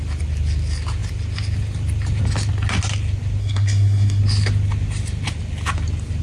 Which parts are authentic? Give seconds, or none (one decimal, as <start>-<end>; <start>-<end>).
0.0-3.4; 4.2-6.2